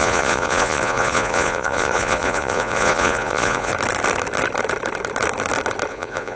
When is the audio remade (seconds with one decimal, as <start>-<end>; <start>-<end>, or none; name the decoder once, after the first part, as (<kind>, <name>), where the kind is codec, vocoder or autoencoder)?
0.0-3.7 (vocoder, Vocos); 5.9-6.4